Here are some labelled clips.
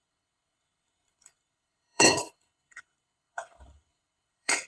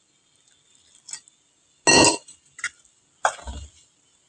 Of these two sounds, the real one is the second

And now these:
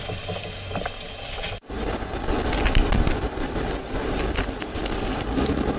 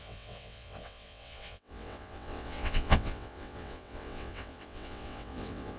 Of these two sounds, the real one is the first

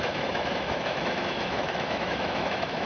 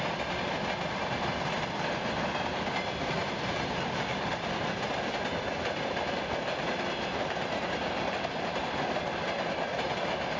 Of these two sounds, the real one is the second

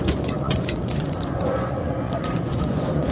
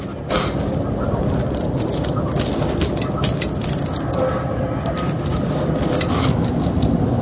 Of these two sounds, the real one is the second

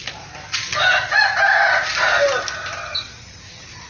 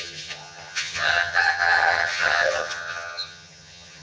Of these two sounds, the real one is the first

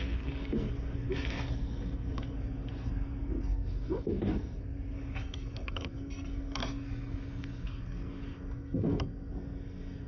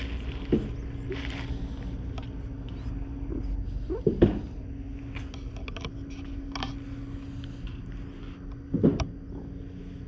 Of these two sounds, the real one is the second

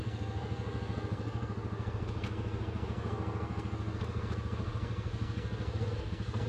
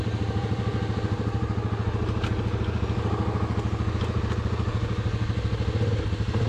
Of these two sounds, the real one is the second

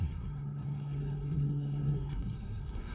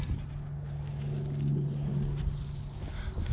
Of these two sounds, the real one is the second